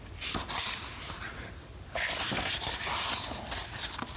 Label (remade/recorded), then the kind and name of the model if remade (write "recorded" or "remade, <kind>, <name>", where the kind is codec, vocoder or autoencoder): recorded